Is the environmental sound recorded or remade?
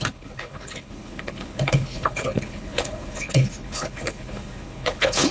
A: remade